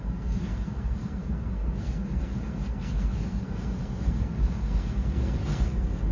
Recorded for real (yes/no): no